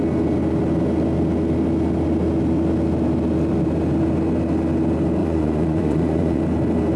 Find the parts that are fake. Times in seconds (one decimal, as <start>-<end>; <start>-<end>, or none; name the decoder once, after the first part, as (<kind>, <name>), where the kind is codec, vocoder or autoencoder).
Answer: 5.2-6.4 (vocoder, Vocos)